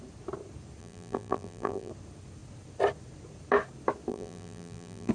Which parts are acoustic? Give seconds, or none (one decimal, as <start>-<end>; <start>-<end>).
0.0-0.8; 1.9-4.1